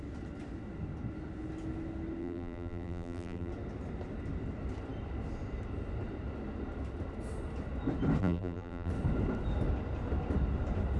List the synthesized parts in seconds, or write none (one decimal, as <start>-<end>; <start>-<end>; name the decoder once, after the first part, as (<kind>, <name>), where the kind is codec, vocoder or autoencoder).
2.2-3.5 (vocoder, BigVGAN v2); 8.2-8.9